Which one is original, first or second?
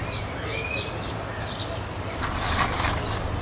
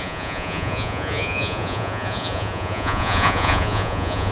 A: first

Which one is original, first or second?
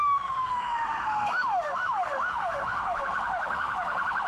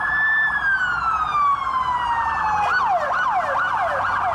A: second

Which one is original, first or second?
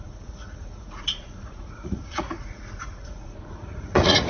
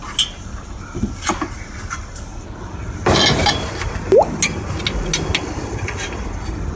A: second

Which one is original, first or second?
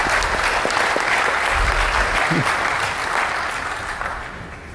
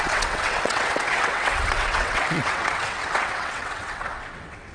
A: first